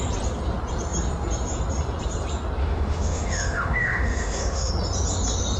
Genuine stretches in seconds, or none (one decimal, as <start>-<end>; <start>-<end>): 0.0-2.6; 4.7-5.6